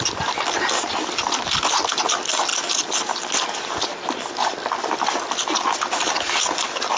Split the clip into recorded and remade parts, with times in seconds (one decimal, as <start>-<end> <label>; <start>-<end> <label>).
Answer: 0.0-7.0 recorded